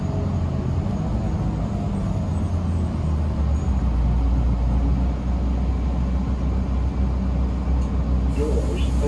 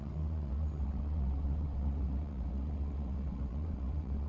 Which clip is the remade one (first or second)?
second